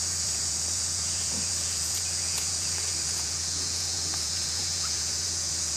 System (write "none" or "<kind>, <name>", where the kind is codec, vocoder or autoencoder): vocoder, Vocos